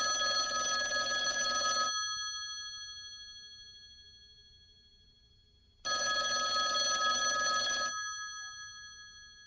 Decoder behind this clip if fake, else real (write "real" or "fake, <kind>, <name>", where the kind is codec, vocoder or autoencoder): real